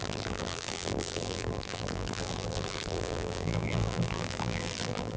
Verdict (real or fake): fake